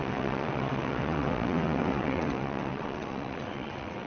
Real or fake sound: fake